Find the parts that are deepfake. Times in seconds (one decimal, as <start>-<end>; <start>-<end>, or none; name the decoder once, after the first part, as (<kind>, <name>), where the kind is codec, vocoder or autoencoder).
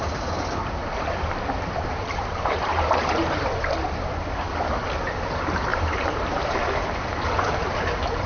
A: 0.8-4.2 (vocoder, BigVGAN v2); 5.7-6.6